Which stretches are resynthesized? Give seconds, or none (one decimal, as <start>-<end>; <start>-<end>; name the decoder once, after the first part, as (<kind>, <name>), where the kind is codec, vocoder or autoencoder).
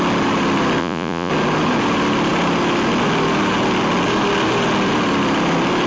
0.8-1.3 (vocoder, Vocos)